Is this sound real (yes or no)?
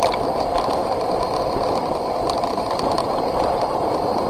no